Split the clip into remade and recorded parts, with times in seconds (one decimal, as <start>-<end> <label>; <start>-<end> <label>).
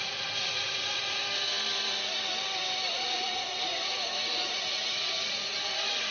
0.0-1.2 remade; 1.2-2.9 recorded; 2.9-6.1 remade